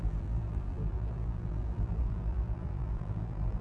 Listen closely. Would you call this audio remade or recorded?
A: remade